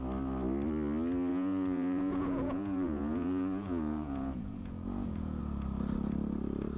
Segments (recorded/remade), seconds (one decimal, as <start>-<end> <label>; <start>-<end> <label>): 0.0-1.3 recorded; 1.3-5.4 remade; 5.4-6.8 recorded